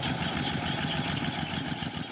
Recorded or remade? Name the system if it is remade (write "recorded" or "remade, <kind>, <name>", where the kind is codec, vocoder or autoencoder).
recorded